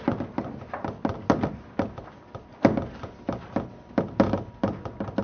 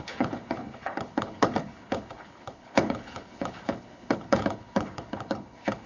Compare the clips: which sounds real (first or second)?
first